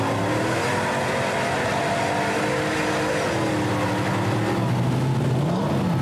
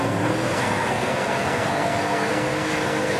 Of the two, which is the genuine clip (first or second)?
first